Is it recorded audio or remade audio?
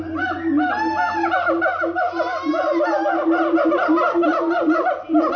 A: recorded